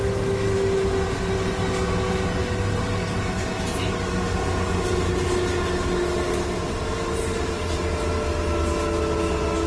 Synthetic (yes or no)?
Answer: no